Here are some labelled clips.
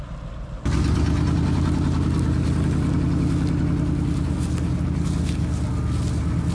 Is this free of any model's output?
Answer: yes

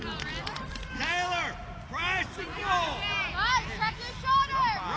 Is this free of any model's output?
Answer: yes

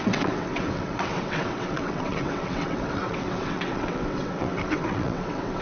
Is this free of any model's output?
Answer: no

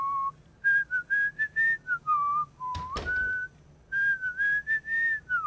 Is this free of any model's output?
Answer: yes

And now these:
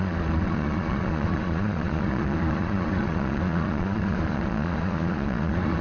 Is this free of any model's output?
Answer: no